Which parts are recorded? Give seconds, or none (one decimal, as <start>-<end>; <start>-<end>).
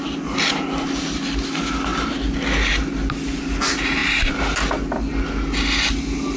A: 0.0-6.4